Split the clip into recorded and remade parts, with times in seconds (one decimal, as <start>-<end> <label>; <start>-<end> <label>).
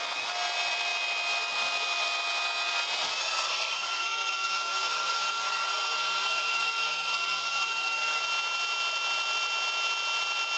0.0-3.2 recorded; 3.2-8.2 remade; 8.2-10.6 recorded